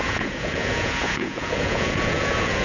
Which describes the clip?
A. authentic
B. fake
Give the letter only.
B